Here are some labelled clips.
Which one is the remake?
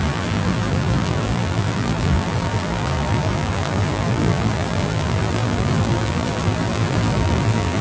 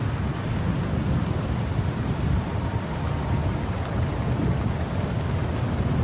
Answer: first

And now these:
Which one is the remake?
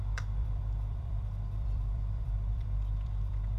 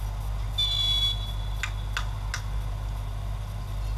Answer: first